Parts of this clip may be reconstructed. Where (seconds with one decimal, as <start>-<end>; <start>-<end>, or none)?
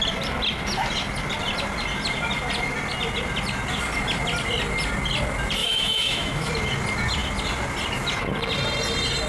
5.6-6.5